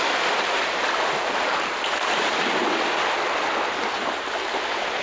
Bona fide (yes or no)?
yes